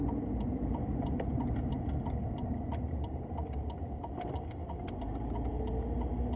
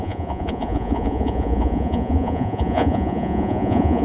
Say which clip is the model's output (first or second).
second